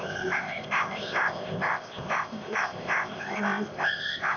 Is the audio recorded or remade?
remade